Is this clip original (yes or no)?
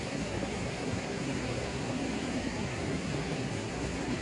no